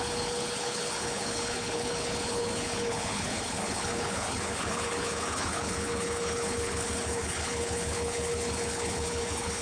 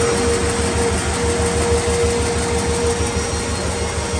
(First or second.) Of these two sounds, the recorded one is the second